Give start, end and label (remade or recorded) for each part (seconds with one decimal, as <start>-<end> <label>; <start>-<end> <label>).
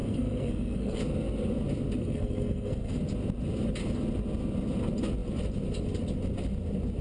0.0-1.0 remade; 1.0-2.0 recorded; 2.0-3.0 remade; 3.0-7.0 recorded